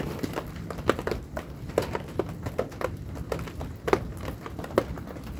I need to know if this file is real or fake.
real